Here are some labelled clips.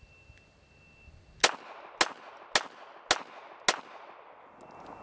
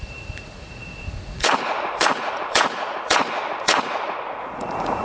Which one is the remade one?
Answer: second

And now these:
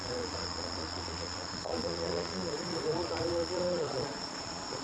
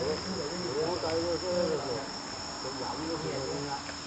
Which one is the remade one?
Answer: first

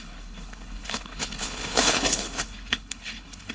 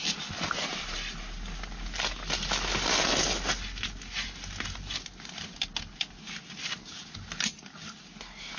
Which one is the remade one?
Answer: first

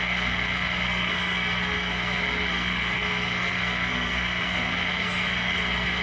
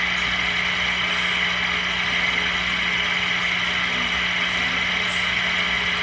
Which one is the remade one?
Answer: first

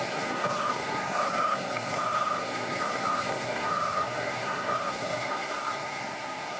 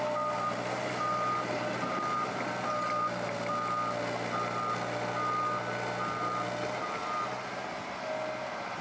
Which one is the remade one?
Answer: first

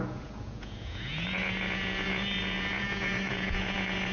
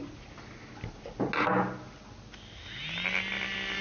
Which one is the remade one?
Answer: first